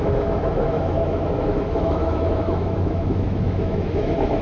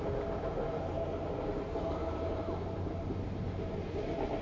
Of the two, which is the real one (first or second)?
second